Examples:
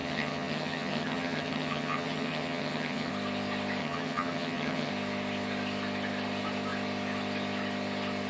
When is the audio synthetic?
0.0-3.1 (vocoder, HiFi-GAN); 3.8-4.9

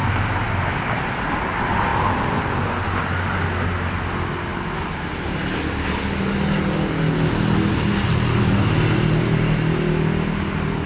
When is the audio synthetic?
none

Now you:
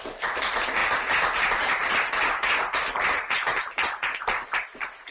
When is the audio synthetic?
none

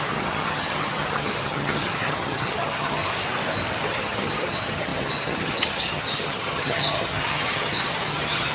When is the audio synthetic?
0.0-3.0 (vocoder, HiFi-GAN); 3.8-8.5